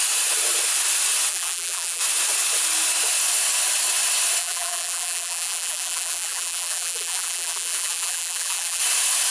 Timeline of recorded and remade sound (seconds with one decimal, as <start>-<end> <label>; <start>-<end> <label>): 0.0-1.3 recorded; 1.3-2.0 remade; 2.0-4.4 recorded; 4.4-8.8 remade; 8.8-9.3 recorded